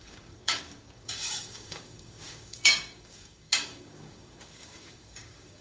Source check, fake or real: fake